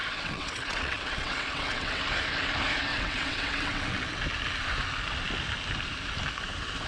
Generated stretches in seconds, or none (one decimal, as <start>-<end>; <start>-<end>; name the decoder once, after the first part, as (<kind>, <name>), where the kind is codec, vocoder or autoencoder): 0.0-2.0 (vocoder, WaveNeXt); 2.9-4.2